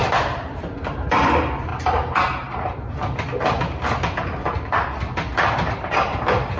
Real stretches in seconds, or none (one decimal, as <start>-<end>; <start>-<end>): 1.7-5.7

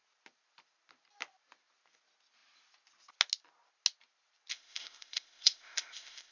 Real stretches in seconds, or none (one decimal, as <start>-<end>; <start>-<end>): 0.0-4.5